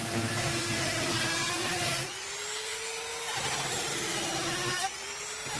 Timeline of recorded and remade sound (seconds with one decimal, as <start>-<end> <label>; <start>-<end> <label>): 0.0-2.1 remade; 2.1-5.6 recorded